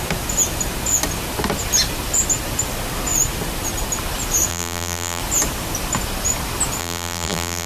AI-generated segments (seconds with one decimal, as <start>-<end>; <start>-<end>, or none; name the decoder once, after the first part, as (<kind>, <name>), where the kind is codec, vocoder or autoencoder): 4.5-5.2 (vocoder, BigVGAN v2); 6.8-7.7